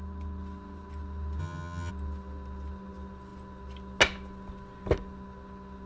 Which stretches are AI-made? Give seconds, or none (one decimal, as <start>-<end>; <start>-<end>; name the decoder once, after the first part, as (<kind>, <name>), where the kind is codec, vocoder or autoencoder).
1.4-1.9 (vocoder, HiFi-GAN)